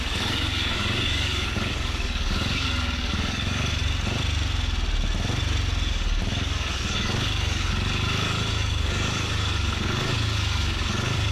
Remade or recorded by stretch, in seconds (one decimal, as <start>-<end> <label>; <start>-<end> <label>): 0.0-3.8 remade; 3.8-5.9 recorded; 5.9-11.3 remade